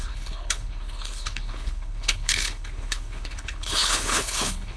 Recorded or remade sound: remade